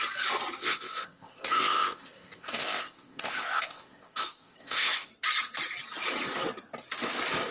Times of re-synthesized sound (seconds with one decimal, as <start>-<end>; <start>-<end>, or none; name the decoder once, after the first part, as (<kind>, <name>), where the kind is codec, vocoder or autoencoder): 0.6-5.1 (codec, ZipCodec)